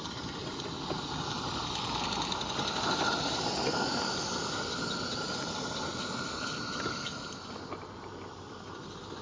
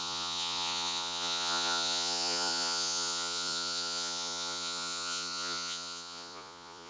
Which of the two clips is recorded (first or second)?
first